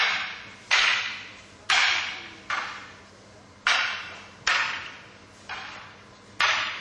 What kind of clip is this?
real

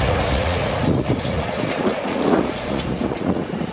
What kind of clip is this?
fake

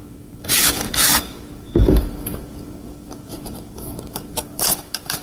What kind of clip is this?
fake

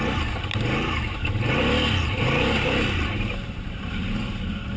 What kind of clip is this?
real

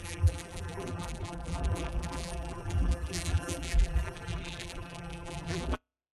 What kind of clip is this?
fake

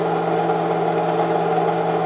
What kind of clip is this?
real